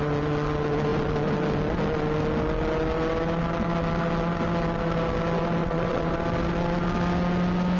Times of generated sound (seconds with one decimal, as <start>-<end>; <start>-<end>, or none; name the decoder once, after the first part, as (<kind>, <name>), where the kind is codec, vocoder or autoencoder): 5.6-6.1 (vocoder, WaveNeXt)